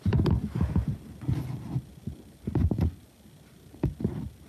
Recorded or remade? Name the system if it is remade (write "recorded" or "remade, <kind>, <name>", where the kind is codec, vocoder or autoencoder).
recorded